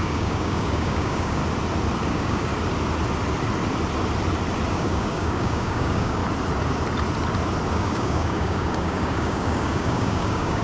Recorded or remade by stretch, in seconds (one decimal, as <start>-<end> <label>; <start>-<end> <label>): 0.0-1.4 remade; 1.4-2.1 recorded; 2.1-2.5 remade; 2.5-4.7 recorded; 4.7-6.2 remade; 6.2-7.7 recorded; 7.7-10.6 remade